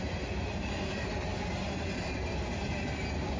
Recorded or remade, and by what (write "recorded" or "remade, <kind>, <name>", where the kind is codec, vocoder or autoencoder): recorded